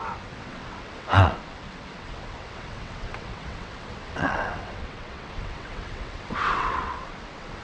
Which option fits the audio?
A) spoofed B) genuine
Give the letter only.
A